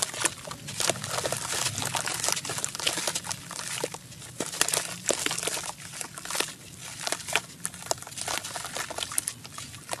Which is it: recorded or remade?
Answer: recorded